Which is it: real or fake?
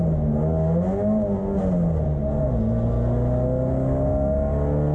real